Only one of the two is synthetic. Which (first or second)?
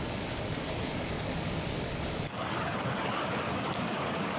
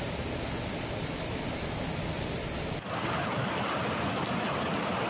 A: first